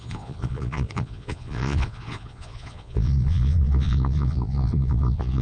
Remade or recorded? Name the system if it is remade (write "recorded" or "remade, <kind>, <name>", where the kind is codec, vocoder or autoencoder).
remade, vocoder, Vocos